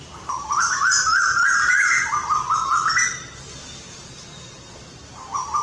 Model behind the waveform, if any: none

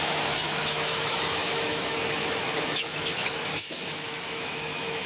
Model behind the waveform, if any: autoencoder, DAC-VAE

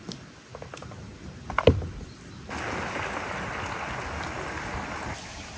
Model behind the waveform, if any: none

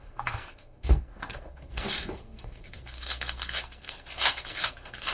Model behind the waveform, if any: codec, SNAC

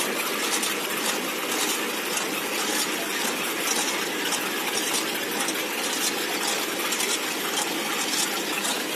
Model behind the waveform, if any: none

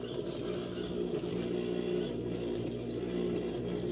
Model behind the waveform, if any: none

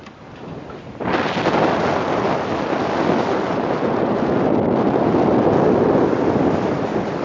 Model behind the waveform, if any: none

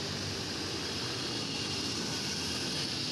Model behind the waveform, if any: none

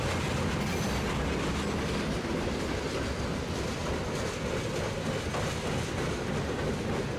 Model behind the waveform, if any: none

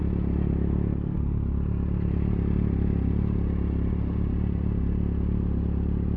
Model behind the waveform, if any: none